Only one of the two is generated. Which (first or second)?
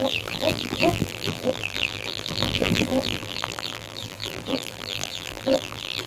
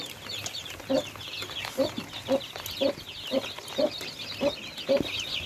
first